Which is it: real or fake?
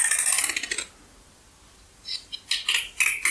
real